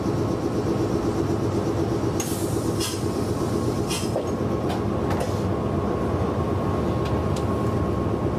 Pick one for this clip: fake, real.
real